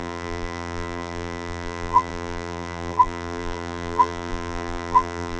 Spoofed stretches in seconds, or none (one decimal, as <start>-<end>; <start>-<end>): 0.0-5.4